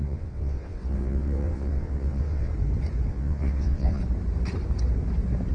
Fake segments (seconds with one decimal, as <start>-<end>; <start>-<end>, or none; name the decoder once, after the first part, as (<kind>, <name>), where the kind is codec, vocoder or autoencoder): 0.0-2.5 (vocoder, WaveNeXt); 3.1-4.0